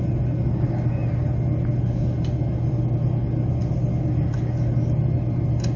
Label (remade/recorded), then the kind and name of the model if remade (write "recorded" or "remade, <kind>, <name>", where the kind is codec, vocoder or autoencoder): recorded